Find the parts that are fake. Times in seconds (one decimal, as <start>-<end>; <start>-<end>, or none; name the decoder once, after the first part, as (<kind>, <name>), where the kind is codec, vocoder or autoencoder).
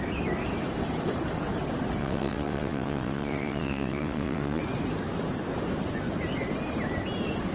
2.0-4.6 (vocoder, WaveNeXt)